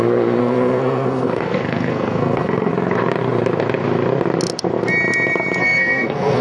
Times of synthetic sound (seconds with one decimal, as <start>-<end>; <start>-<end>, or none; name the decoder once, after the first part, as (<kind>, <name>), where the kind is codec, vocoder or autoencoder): 0.4-2.7 (codec, SNAC); 5.6-6.4